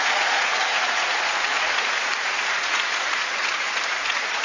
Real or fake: fake